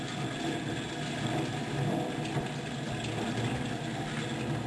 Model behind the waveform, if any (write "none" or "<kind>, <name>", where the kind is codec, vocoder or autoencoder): none